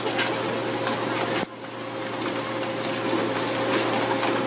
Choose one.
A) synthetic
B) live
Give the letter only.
B